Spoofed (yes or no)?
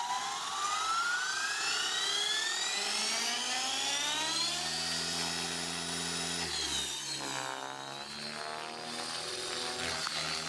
no